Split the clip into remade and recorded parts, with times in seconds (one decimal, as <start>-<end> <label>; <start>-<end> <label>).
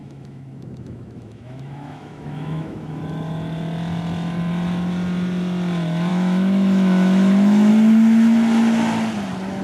0.0-3.0 remade; 3.0-6.1 recorded; 6.1-7.7 remade; 7.7-9.6 recorded